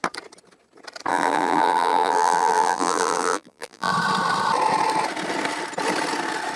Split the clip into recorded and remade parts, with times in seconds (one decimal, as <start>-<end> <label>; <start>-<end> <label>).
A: 0.0-1.1 recorded; 1.1-3.9 remade; 3.9-6.6 recorded